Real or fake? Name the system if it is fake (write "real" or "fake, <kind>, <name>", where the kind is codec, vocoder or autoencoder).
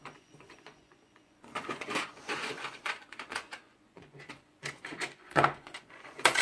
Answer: fake, vocoder, Vocos